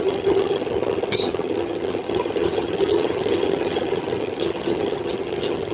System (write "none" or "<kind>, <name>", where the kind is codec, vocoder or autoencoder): vocoder, HiFi-GAN